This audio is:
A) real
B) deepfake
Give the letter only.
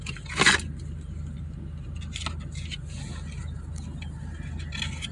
A